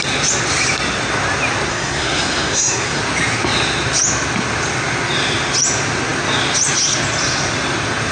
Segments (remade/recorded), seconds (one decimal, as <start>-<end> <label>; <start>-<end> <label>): 0.0-1.7 recorded; 1.7-3.0 remade; 3.0-8.1 recorded